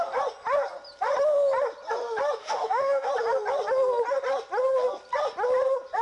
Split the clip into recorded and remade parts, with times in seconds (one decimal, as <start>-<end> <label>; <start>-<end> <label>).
0.0-2.4 recorded; 2.4-3.1 remade; 3.1-6.0 recorded